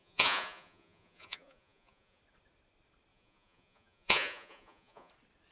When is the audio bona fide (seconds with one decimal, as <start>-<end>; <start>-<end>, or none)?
2.2-3.1; 5.1-5.5